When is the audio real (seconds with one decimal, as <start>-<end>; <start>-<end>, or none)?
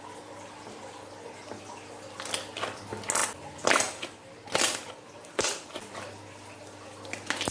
0.0-7.5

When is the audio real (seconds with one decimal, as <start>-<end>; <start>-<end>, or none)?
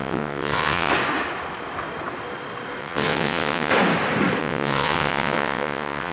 0.9-2.8; 3.7-4.4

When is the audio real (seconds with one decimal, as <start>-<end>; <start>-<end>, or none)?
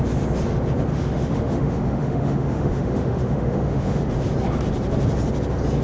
0.0-0.9; 4.1-5.8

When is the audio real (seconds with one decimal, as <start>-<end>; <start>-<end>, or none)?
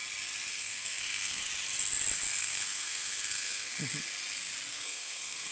0.0-0.5; 1.4-2.4; 3.8-4.7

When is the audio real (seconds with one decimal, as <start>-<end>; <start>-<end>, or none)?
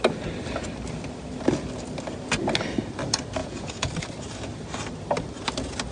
0.0-3.4; 3.9-5.9